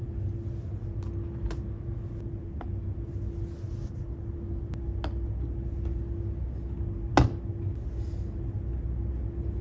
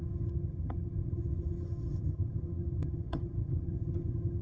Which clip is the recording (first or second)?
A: first